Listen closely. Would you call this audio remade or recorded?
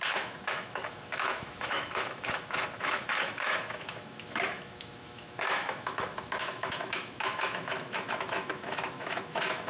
remade